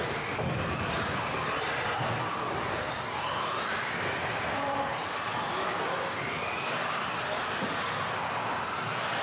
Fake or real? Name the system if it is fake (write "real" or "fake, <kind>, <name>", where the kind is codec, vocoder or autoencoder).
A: real